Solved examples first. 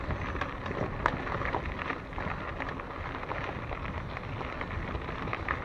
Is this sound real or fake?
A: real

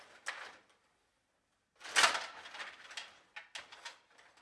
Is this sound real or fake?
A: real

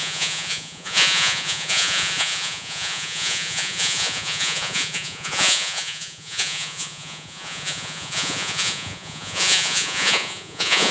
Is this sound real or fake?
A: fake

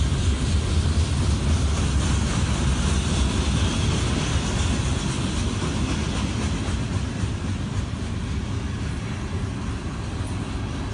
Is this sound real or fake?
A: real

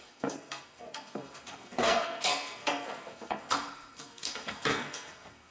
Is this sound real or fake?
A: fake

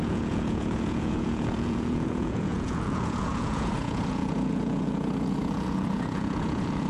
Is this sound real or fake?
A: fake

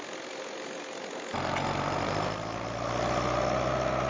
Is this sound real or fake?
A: real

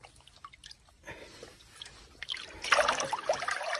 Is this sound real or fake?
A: real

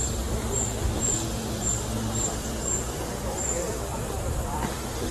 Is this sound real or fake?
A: fake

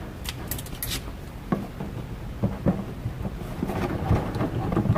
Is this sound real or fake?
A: real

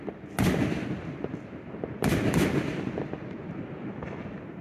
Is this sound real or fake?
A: real